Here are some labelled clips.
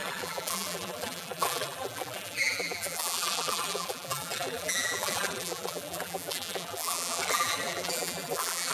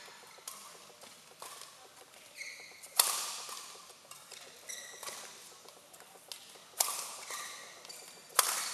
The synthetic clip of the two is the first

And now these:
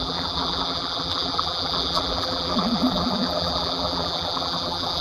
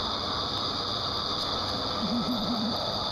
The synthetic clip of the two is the first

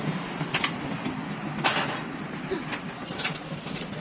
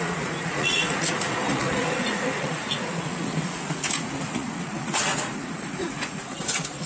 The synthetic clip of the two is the second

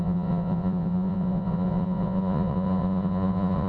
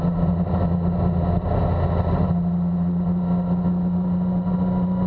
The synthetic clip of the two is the first